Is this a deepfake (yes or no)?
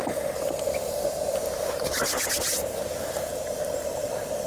no